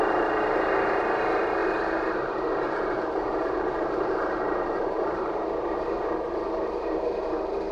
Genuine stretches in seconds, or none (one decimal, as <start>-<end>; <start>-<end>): 0.0-1.6; 5.4-7.7